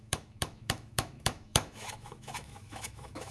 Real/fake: fake